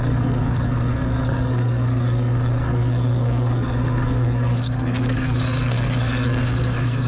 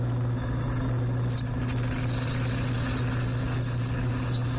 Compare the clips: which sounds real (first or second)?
second